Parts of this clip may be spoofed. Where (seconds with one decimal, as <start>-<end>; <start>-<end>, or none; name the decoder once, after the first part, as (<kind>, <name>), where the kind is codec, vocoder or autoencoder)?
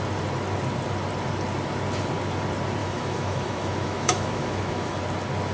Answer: 2.8-5.0 (autoencoder, DAC-VAE)